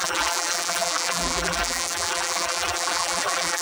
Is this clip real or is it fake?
fake